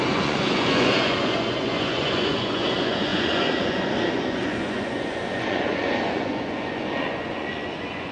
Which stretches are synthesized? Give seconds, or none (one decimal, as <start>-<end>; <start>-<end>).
0.0-8.1